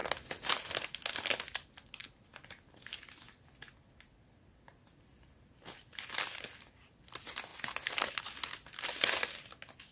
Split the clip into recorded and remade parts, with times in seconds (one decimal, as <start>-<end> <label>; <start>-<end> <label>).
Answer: 0.0-9.9 recorded